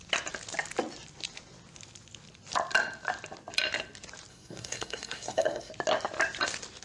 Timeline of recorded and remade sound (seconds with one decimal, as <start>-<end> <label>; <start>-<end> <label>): 0.0-4.3 recorded; 4.3-5.7 remade; 5.7-6.8 recorded